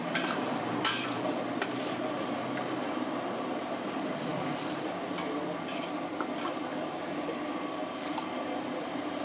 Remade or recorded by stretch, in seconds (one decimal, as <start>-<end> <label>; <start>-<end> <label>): 0.0-9.2 remade